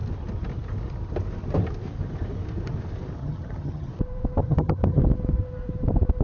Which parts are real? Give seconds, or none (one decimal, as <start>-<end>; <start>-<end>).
0.0-3.2; 3.9-4.4; 5.0-6.2